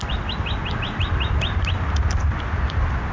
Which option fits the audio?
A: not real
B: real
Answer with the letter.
B